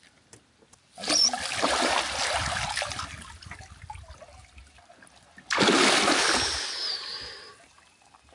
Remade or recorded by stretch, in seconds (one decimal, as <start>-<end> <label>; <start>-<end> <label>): 0.0-2.4 recorded; 2.4-3.1 remade; 3.1-8.3 recorded